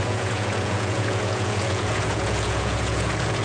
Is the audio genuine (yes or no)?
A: no